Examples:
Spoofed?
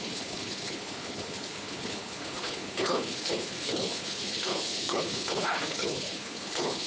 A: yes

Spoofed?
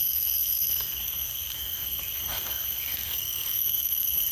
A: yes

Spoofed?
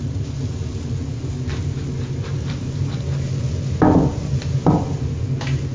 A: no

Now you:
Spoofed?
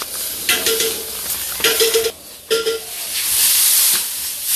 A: no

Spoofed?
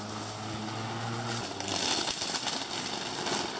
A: no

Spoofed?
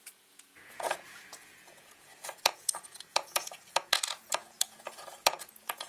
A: yes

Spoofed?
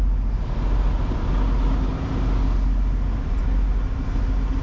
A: no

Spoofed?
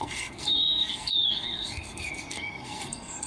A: yes